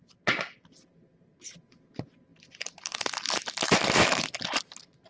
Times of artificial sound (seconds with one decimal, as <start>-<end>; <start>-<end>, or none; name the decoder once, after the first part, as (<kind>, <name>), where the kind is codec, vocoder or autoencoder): none